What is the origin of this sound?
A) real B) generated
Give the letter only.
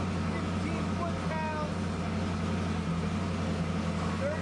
A